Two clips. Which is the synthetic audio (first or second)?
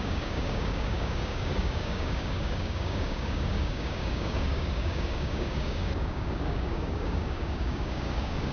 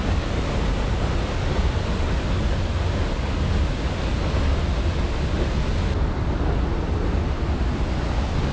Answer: first